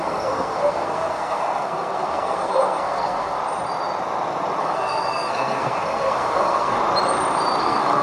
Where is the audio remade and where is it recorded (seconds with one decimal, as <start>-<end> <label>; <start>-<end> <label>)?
0.0-3.4 remade; 3.4-4.6 recorded; 4.6-6.8 remade; 6.8-7.6 recorded; 7.6-8.0 remade